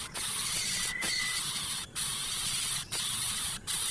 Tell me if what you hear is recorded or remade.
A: remade